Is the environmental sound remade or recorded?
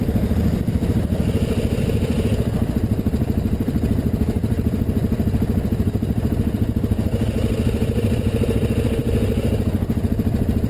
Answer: remade